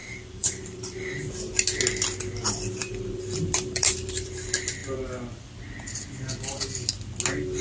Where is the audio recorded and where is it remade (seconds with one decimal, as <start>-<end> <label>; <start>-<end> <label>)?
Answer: 0.0-1.3 remade; 1.3-2.8 recorded; 2.8-4.3 remade; 4.3-7.6 recorded

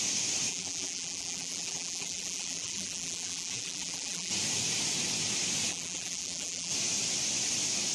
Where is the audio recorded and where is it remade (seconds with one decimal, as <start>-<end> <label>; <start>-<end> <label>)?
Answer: 0.0-0.5 recorded; 0.5-4.3 remade; 4.3-5.7 recorded; 5.7-6.7 remade; 6.7-7.9 recorded

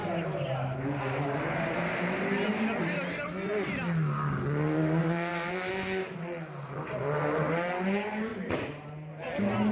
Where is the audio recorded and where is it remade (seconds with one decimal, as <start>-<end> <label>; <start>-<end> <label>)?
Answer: 0.0-2.2 remade; 2.2-5.0 recorded; 5.0-5.7 remade; 5.7-9.7 recorded

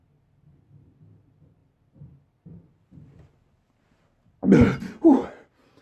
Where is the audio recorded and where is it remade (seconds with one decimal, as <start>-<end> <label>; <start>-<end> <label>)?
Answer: 0.0-5.8 recorded

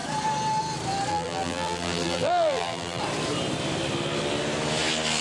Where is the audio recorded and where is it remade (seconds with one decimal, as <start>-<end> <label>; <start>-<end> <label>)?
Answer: 0.0-1.1 recorded; 1.1-3.0 remade; 3.0-5.2 recorded

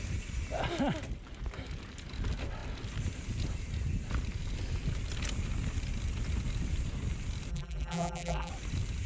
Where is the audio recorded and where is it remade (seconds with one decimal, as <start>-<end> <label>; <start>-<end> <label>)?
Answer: 0.0-7.5 recorded; 7.5-8.5 remade; 8.5-9.1 recorded

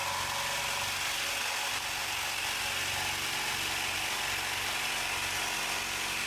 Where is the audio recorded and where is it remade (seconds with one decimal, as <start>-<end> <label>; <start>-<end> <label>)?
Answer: 0.0-0.6 remade; 0.6-6.3 recorded